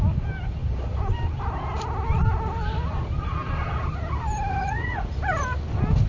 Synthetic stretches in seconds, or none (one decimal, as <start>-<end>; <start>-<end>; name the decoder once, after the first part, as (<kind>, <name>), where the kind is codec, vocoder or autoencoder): 4.5-5.1 (vocoder, Vocos)